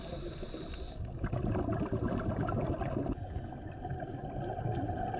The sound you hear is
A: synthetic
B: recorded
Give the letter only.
B